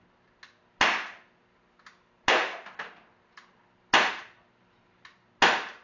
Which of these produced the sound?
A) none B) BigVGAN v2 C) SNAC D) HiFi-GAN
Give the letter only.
A